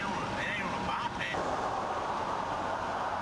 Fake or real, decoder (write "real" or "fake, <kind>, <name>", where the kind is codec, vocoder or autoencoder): fake, vocoder, BigVGAN v2